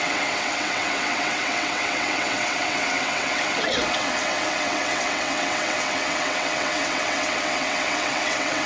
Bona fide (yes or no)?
no